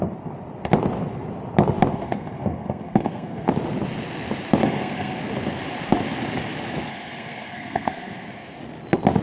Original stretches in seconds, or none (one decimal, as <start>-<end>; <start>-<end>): 0.0-1.9; 3.5-4.6; 5.2-6.9; 8.6-9.2